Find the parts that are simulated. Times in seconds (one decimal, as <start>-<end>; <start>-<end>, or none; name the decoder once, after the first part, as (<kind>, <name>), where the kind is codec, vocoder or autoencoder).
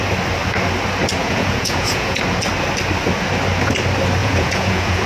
1.2-2.2 (vocoder, Vocos); 4.2-5.1